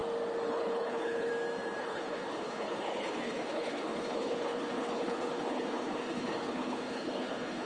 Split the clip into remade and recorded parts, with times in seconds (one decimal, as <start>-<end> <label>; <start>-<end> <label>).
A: 0.0-0.5 recorded; 0.5-1.3 remade; 1.3-1.8 recorded; 1.8-7.7 remade

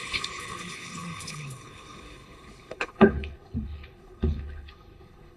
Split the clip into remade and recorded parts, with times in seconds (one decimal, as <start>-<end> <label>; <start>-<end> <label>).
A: 0.0-5.4 remade

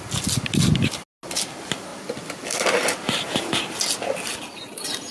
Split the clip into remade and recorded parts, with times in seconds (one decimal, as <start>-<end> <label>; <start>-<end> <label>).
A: 0.0-5.1 recorded